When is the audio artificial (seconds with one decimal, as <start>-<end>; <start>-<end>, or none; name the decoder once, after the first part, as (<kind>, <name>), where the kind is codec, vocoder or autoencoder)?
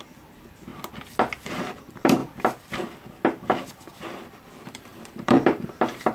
0.0-0.7 (vocoder, BigVGAN v2); 1.5-2.2; 4.2-6.1